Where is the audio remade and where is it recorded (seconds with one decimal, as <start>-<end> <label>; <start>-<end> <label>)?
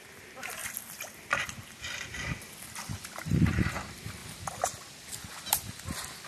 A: 0.0-0.6 remade; 0.6-3.2 recorded; 3.2-4.2 remade; 4.2-6.3 recorded